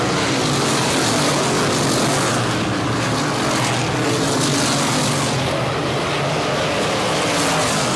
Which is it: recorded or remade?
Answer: recorded